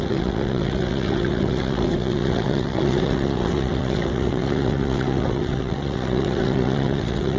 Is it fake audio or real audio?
fake